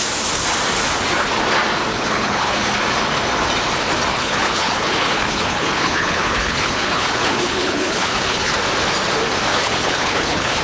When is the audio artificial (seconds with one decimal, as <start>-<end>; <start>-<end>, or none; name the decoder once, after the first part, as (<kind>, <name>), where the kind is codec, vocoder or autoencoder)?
1.9-2.7 (codec, HILCodec); 4.1-8.5; 9.5-10.6